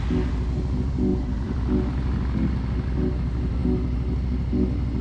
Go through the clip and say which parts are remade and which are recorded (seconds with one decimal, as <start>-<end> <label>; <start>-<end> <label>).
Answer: 0.0-1.1 recorded; 1.1-2.5 remade; 2.5-5.0 recorded